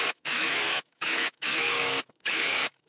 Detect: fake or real fake